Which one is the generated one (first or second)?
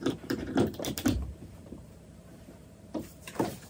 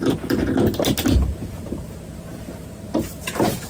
first